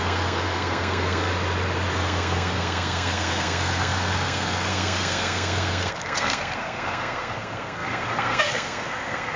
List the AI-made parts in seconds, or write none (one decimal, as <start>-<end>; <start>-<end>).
0.0-1.3; 1.9-9.4